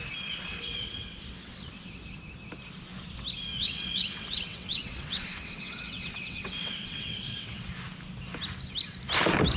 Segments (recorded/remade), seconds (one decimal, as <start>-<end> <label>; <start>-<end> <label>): 0.0-0.5 recorded; 0.5-2.2 remade; 2.2-3.6 recorded; 3.6-7.7 remade; 7.7-9.6 recorded